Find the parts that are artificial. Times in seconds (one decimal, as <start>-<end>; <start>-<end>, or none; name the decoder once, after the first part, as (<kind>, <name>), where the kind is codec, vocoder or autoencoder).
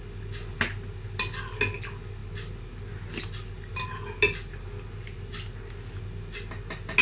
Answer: none